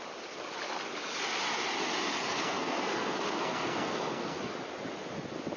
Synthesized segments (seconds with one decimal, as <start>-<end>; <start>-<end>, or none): 2.3-4.4